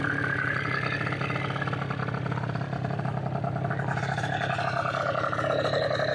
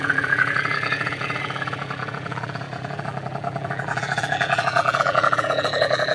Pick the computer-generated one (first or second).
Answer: second